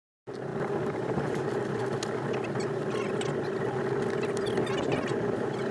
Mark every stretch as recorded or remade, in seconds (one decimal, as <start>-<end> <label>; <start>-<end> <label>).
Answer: 0.0-0.5 recorded; 0.5-1.6 remade; 1.6-4.9 recorded; 4.9-5.7 remade

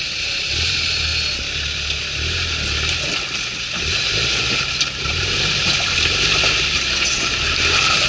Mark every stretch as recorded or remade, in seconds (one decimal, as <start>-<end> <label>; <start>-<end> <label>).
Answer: 0.0-1.1 remade; 1.1-3.8 recorded; 3.8-8.1 remade

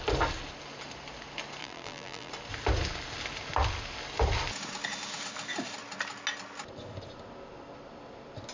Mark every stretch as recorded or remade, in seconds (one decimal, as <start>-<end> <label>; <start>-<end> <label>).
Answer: 0.0-1.6 recorded; 1.6-2.3 remade; 2.3-8.5 recorded